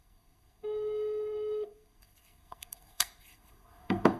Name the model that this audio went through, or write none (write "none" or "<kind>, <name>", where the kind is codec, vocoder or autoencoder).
codec, SNAC